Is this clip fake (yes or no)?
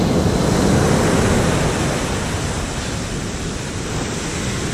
no